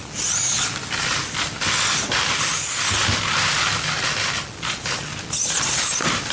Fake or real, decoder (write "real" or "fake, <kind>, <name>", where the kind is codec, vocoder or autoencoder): real